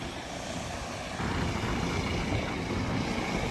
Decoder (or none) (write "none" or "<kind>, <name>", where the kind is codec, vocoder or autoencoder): none